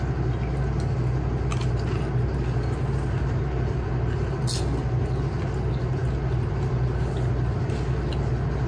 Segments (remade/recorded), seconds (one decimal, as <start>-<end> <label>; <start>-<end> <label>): 0.0-8.7 recorded